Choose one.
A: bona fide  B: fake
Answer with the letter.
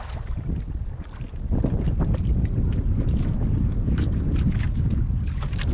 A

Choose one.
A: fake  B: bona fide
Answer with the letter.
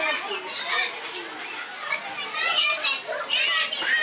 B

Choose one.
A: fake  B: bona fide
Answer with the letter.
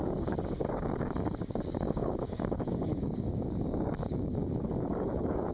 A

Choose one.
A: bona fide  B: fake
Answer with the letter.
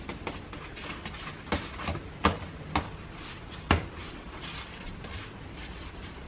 A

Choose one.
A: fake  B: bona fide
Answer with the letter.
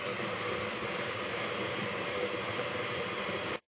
A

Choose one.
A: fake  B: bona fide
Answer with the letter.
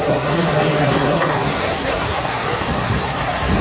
A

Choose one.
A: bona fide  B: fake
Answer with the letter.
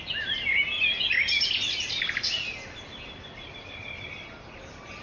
A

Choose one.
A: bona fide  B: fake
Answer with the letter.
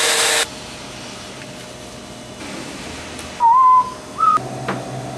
A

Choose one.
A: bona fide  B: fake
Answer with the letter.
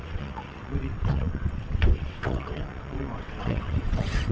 B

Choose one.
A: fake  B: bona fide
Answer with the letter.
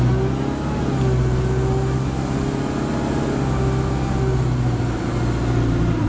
B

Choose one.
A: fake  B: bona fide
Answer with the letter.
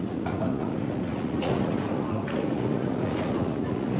A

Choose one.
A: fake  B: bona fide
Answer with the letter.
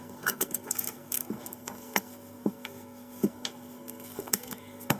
A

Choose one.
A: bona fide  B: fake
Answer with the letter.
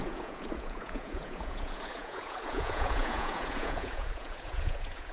B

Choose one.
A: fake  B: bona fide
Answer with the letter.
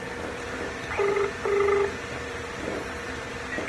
B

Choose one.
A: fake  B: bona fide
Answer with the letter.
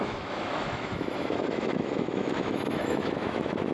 A